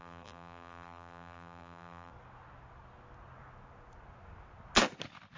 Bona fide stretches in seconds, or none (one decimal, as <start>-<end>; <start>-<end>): 2.1-5.4